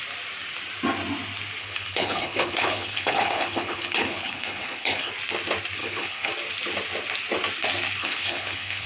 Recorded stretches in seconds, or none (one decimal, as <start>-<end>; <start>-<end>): 0.0-1.6; 5.1-5.8; 6.3-8.0